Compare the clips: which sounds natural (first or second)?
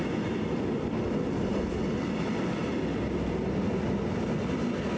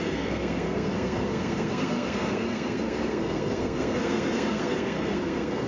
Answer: first